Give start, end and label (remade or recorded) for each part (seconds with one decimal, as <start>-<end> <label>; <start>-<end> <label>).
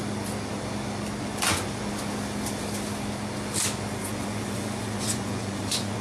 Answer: 0.0-4.0 recorded; 4.0-6.0 remade